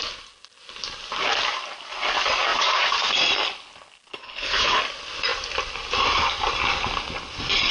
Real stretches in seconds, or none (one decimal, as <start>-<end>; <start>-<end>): 0.0-4.1; 4.8-7.7